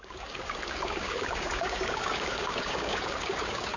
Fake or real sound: fake